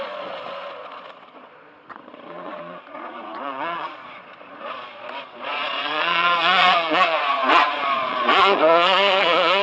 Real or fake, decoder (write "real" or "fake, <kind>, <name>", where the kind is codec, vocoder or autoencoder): fake, vocoder, Vocos